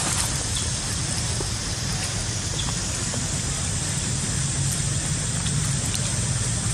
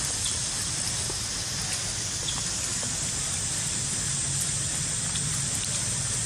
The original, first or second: second